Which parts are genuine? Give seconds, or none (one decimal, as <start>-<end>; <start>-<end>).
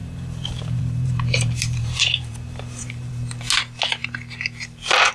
3.1-5.1